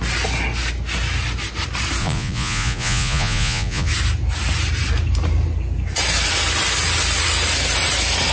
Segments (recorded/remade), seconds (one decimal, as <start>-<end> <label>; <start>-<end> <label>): 0.0-2.0 recorded; 2.0-3.9 remade; 3.9-8.3 recorded